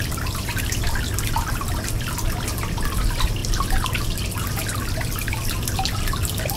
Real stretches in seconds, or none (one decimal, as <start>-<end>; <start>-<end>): 0.0-6.6